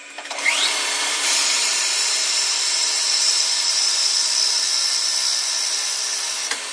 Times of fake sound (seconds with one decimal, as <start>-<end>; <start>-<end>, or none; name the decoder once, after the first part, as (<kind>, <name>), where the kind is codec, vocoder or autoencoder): 0.0-4.0 (vocoder, BigVGAN v2)